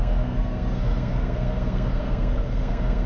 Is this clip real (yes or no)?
no